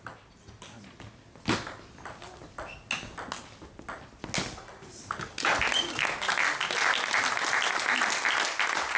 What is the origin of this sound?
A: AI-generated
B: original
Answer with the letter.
B